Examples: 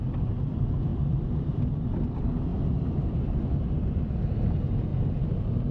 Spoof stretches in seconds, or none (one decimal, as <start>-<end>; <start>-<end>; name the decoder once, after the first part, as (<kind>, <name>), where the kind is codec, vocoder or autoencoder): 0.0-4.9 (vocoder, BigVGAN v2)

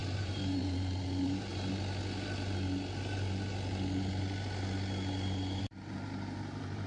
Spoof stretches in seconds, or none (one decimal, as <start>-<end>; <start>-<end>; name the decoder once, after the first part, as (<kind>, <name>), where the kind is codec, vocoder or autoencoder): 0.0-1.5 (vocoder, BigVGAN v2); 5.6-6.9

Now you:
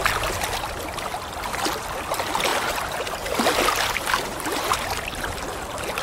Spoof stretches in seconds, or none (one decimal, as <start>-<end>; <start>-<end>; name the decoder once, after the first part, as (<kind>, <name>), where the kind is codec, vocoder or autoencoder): 2.5-4.7 (vocoder, BigVGAN v2)

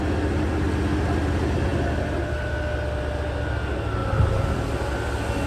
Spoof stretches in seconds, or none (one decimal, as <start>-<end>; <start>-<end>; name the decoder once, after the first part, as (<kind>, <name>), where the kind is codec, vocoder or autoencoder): 4.0-4.9 (vocoder, BigVGAN v2)